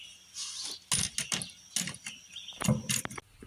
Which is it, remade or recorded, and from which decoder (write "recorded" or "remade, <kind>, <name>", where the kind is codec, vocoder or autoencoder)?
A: recorded